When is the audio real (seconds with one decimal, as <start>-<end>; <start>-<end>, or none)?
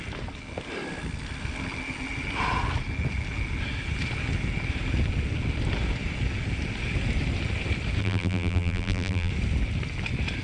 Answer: 0.0-8.0; 9.3-10.4